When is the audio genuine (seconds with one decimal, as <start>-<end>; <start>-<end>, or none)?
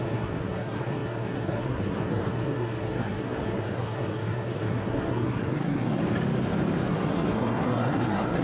6.0-6.9